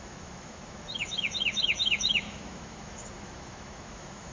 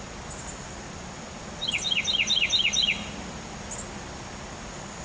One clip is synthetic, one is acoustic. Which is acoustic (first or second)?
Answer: second